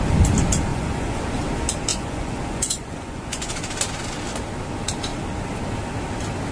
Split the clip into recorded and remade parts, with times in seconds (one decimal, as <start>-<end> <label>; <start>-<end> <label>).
0.0-0.7 recorded; 0.7-1.2 remade; 1.2-1.9 recorded; 1.9-3.5 remade; 3.5-6.5 recorded